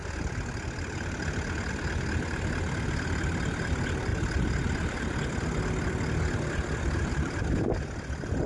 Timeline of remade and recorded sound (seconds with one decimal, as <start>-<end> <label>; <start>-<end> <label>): 0.0-8.5 recorded